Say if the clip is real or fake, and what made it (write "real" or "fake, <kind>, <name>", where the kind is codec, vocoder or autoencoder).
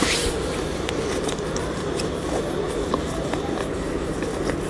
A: real